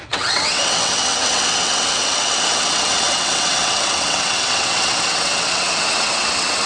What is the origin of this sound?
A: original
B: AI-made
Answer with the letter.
B